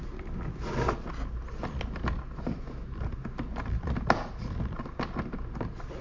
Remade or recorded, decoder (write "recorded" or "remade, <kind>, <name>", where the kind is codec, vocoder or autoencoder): recorded